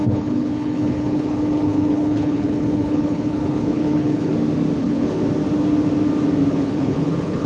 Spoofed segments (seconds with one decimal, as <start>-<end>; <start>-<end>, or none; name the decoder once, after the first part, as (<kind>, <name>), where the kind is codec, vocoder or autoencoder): 0.0-4.3 (codec, HILCodec); 4.8-5.2; 6.5-7.5